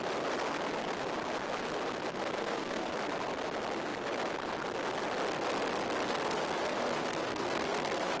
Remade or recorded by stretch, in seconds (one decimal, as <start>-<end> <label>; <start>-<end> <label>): 0.0-2.2 recorded; 2.2-2.9 remade; 2.9-6.1 recorded; 6.1-8.2 remade